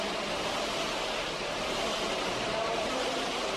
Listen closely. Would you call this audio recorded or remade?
recorded